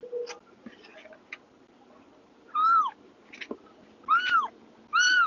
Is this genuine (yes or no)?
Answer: yes